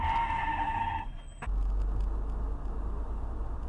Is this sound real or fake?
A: real